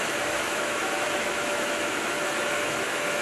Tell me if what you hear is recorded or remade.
remade